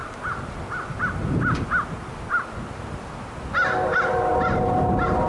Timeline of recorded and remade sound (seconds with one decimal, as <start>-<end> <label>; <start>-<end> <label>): 0.0-4.3 recorded; 4.3-5.3 remade